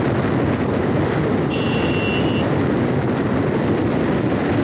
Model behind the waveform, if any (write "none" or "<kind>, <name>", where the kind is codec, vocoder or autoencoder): none